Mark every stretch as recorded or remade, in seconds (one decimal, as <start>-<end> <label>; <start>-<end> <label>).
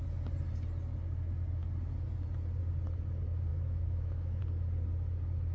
0.0-3.5 recorded; 3.5-4.4 remade; 4.4-5.5 recorded